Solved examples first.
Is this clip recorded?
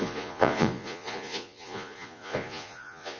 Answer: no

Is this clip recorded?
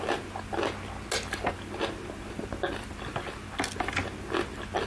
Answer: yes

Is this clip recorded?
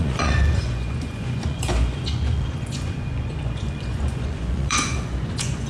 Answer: no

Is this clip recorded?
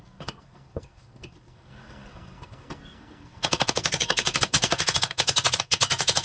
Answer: no